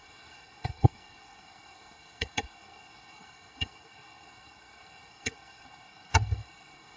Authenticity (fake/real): fake